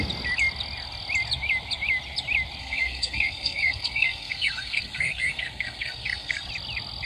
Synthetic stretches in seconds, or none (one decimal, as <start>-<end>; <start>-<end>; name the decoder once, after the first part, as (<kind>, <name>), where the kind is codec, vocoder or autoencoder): 2.6-6.5 (codec, SNAC)